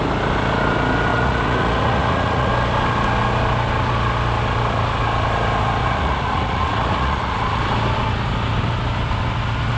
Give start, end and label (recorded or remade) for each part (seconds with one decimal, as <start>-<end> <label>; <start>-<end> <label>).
0.0-1.1 recorded; 1.1-2.5 remade; 2.5-5.8 recorded; 5.8-7.6 remade; 7.6-9.8 recorded